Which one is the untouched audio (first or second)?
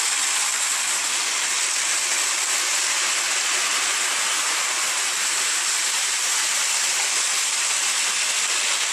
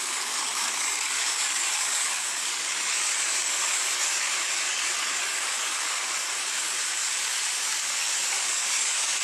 first